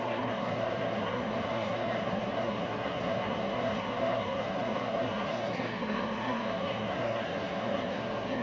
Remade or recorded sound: remade